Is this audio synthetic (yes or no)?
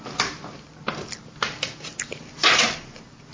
no